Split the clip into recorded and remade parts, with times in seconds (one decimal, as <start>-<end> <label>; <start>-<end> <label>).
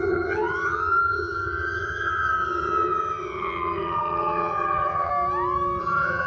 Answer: 0.0-5.1 remade; 5.1-5.8 recorded; 5.8-6.3 remade